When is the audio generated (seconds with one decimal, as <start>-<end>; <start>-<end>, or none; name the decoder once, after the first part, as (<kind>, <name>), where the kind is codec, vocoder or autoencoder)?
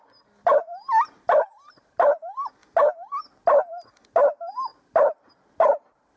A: none